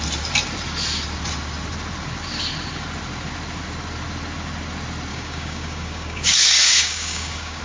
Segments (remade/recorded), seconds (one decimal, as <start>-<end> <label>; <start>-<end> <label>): 0.0-5.1 recorded; 5.1-7.6 remade